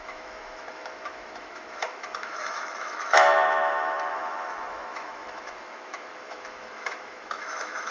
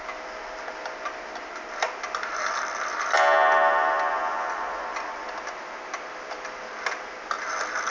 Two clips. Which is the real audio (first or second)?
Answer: second